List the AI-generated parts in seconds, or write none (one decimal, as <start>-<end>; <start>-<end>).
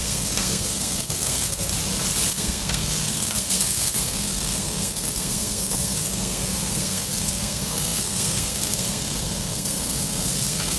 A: 0.0-1.7; 2.3-10.8